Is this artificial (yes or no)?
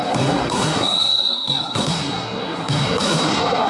yes